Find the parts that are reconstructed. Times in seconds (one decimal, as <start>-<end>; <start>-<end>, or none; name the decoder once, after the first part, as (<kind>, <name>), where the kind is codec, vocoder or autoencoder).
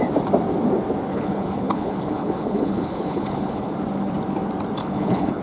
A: 1.1-3.7 (codec, HILCodec); 4.8-5.4